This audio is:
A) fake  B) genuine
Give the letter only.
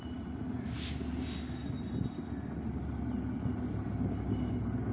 B